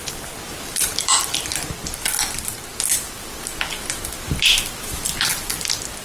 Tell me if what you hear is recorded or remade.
recorded